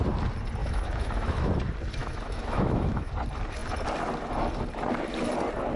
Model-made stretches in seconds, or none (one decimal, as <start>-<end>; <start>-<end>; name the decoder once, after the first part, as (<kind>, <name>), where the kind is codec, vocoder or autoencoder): 0.6-1.5 (autoencoder, DAC-VAE); 2.0-3.1